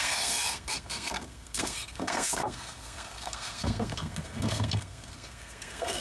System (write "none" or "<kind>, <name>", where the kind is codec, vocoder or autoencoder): codec, SNAC